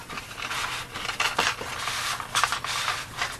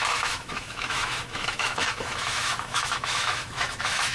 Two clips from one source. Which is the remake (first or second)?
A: second